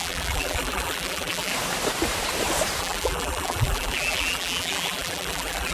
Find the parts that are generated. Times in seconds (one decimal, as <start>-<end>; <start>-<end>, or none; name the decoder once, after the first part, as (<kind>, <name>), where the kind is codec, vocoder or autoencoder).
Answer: 0.0-1.5 (vocoder, BigVGAN v2); 2.8-5.7